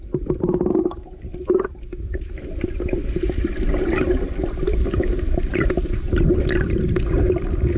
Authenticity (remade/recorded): remade